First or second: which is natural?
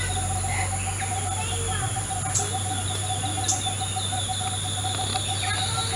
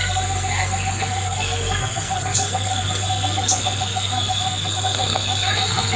first